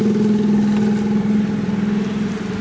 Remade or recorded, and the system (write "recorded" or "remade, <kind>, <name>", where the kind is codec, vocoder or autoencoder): recorded